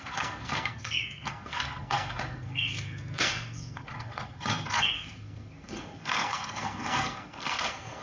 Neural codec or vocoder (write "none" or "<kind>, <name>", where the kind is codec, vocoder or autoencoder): codec, SNAC